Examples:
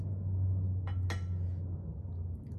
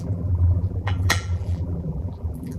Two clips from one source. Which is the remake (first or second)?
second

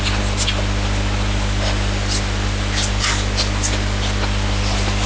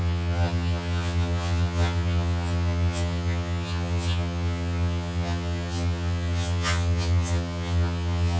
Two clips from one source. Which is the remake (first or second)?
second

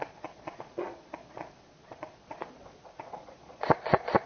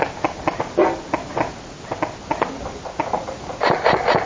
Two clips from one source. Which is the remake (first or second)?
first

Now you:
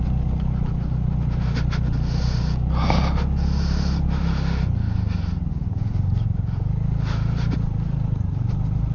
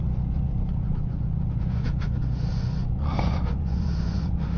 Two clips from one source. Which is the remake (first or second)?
second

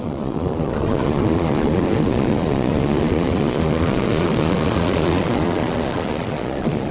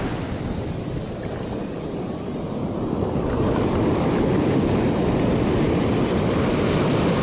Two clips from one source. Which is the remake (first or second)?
first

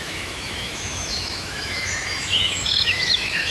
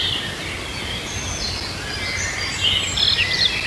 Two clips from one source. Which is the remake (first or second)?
first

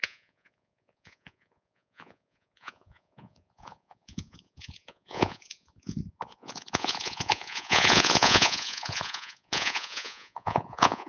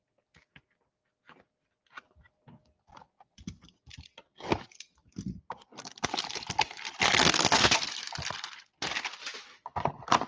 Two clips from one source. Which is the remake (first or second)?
first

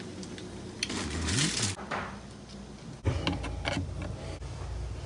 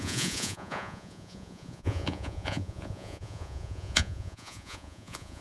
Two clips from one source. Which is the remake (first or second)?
second